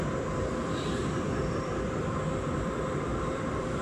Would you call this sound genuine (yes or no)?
no